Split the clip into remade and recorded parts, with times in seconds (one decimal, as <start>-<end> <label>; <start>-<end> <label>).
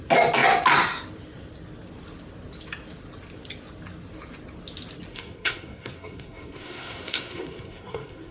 0.0-5.1 recorded; 5.1-8.3 remade